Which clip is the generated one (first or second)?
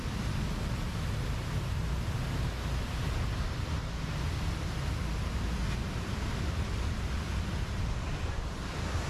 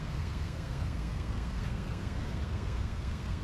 second